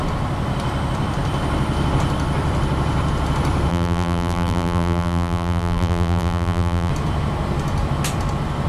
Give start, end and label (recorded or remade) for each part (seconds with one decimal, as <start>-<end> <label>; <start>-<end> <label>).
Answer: 0.0-3.7 recorded; 3.7-6.9 remade; 6.9-8.7 recorded